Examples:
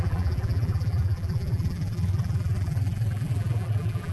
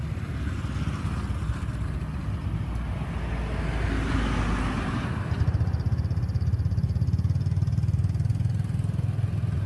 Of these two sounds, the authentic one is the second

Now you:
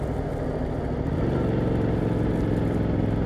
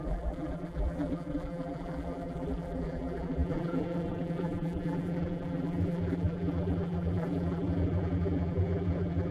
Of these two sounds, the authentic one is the first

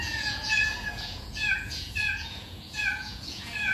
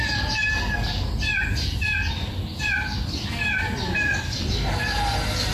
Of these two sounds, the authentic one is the second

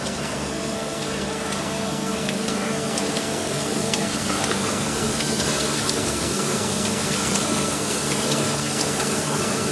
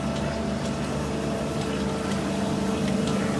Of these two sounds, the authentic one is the second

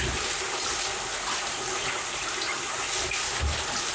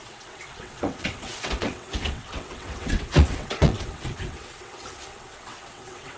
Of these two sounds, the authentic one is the first